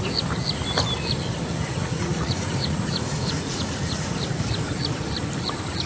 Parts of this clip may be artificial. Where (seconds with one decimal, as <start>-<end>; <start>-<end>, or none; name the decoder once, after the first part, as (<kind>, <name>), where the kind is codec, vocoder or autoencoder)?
1.8-4.1 (vocoder, Vocos)